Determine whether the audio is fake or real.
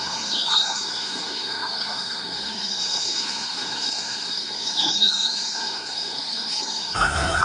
fake